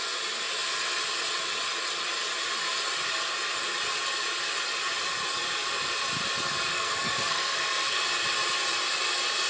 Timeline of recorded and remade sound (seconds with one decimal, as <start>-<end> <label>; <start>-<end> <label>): 0.0-6.7 recorded; 6.7-8.0 remade; 8.0-9.5 recorded